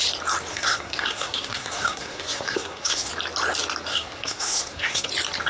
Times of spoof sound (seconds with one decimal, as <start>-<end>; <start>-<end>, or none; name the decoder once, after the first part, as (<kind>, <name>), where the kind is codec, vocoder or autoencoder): 0.5-3.1 (codec, SNAC); 3.9-5.1

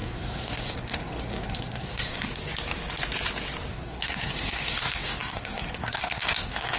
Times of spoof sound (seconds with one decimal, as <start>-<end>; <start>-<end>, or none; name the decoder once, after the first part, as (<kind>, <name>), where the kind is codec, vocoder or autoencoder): 0.0-2.3 (codec, SNAC); 3.7-6.8

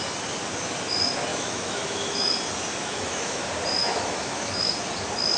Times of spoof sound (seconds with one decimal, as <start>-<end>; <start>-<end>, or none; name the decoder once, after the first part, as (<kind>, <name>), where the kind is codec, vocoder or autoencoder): 1.3-2.3 (autoencoder, DAC-VAE); 2.8-3.4; 3.8-4.6

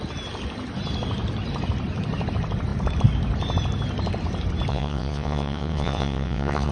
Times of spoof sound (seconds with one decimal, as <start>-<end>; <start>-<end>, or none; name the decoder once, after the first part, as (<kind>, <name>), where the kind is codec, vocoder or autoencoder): 4.7-6.7 (vocoder, WaveNeXt)